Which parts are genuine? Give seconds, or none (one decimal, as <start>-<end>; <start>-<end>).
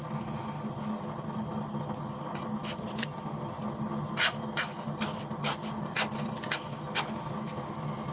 0.0-8.1